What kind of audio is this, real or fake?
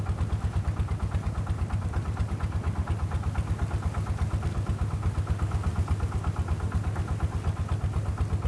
real